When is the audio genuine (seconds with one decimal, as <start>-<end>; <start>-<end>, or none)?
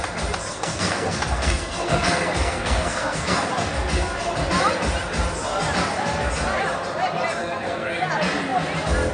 0.0-0.5; 3.5-7.4; 7.9-9.1